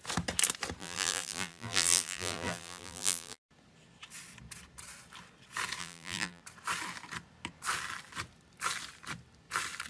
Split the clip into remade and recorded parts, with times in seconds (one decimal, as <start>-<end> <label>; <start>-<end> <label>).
0.0-0.8 recorded; 0.8-3.4 remade; 3.4-5.8 recorded; 5.8-6.4 remade; 6.4-9.9 recorded